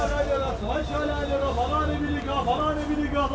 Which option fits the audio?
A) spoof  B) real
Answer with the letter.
B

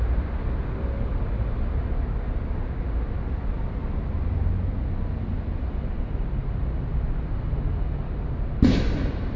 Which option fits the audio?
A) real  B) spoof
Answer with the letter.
A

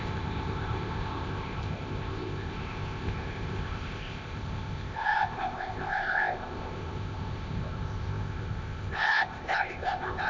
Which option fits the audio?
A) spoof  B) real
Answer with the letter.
A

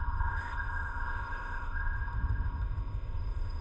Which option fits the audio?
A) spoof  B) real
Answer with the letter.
A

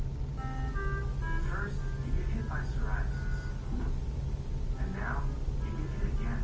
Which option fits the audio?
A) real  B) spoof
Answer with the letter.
A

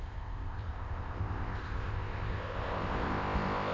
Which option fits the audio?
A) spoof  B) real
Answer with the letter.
A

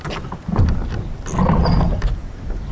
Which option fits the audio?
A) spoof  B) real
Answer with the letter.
B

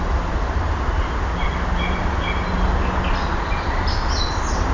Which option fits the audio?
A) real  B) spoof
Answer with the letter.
A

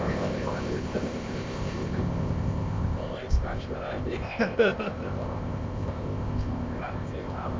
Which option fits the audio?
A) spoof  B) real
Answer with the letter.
A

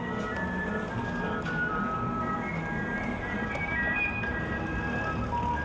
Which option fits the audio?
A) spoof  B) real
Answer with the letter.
B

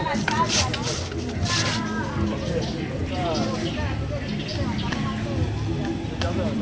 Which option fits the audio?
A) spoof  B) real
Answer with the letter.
B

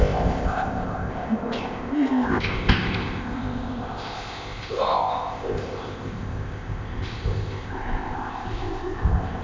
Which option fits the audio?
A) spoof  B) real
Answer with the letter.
A